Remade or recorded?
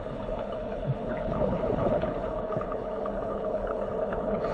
remade